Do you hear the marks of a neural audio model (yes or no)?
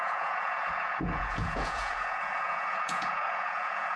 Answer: yes